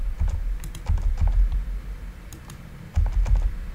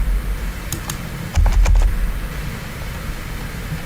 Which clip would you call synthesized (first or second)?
first